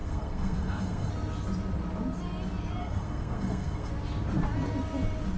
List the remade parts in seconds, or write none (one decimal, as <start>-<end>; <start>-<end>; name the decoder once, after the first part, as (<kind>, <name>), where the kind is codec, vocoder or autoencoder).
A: 0.0-1.1 (codec, SNAC); 2.8-3.9